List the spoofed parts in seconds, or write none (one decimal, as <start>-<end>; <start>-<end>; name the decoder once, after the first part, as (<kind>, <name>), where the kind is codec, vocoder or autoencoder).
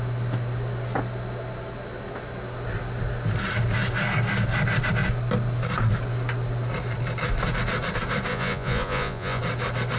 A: 8.3-9.4 (vocoder, Vocos)